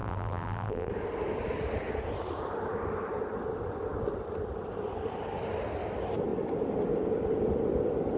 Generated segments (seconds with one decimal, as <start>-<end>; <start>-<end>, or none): 0.0-0.9